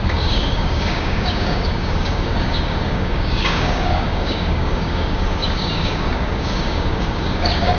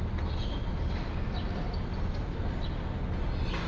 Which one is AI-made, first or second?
first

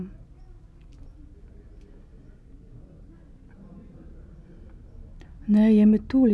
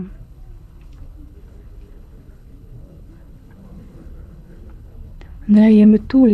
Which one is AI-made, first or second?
second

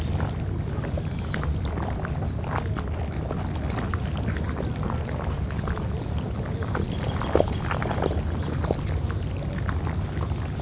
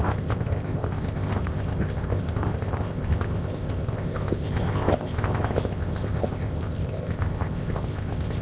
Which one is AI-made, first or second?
second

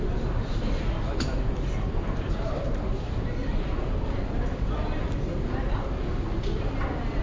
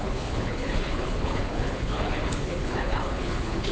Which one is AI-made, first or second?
second